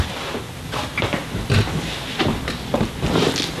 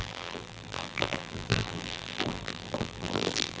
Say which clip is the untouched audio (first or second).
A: first